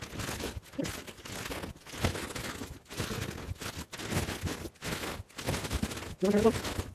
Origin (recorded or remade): recorded